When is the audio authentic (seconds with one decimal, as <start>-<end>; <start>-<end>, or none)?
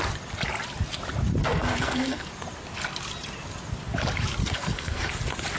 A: 0.0-1.4; 2.3-4.4; 5.1-5.6